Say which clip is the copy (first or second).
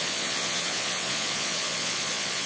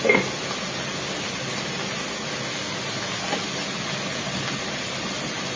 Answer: first